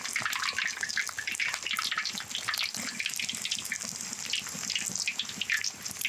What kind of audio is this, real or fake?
real